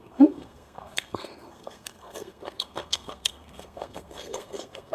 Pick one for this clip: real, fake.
fake